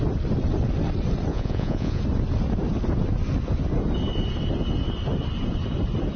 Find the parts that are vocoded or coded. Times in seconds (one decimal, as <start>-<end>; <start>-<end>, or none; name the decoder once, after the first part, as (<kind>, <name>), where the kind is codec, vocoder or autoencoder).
1.3-2.0 (vocoder, Vocos)